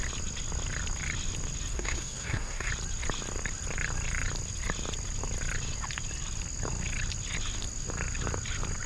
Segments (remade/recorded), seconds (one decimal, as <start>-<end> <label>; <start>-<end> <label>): 0.0-1.7 recorded; 1.7-2.7 remade; 2.7-8.9 recorded